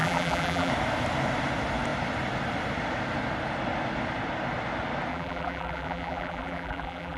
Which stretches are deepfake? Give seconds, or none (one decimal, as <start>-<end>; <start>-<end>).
0.0-0.7; 5.1-7.2